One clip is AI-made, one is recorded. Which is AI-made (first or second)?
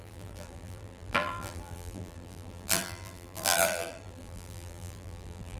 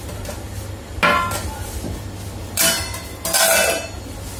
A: first